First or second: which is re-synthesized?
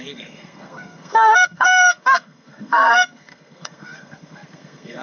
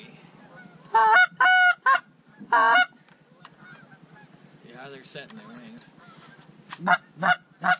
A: first